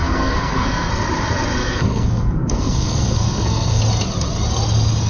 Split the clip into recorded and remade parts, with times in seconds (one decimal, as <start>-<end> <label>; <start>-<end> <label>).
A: 0.0-0.9 remade; 0.9-1.6 recorded; 1.6-3.8 remade; 3.8-5.1 recorded